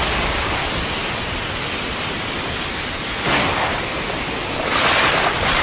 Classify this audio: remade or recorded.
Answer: recorded